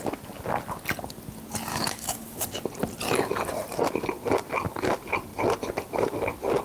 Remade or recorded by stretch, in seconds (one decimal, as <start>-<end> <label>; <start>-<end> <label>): 0.0-1.7 recorded; 1.7-2.4 remade; 2.4-6.6 recorded